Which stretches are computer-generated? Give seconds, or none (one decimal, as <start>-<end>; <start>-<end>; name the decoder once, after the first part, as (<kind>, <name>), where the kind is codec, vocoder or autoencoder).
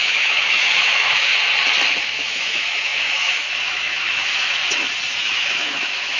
0.0-1.3 (autoencoder, DAC-VAE); 2.0-4.6; 5.2-6.2